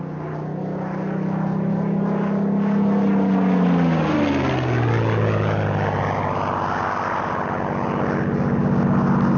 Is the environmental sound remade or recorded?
recorded